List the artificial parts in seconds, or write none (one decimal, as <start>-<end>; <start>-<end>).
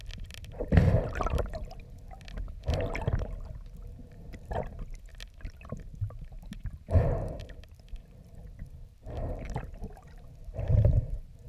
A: 5.1-9.8